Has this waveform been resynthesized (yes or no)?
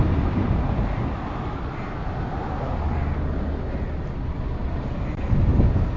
no